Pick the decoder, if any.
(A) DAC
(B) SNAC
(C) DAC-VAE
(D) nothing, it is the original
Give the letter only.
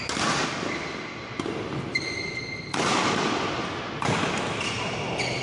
D